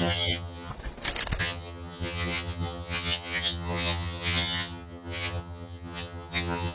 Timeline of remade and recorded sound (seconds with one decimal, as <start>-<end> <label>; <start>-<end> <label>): 0.0-0.7 remade; 0.7-1.4 recorded; 1.4-6.7 remade